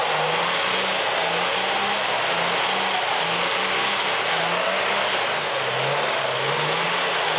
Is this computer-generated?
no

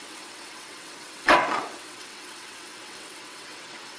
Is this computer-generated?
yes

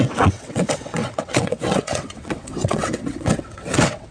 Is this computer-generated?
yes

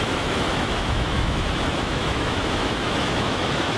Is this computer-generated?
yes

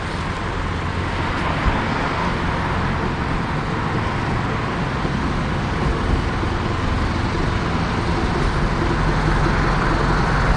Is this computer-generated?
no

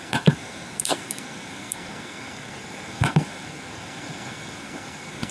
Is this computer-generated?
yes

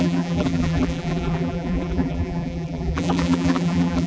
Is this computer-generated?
yes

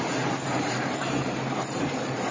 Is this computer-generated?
yes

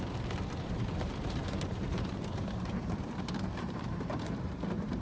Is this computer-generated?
yes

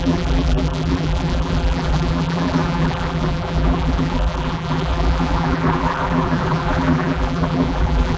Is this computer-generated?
yes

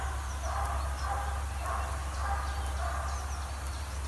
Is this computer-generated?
no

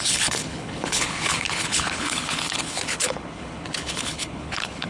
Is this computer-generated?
yes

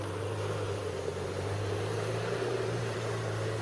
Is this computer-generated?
yes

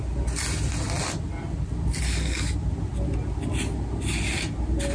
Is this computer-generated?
no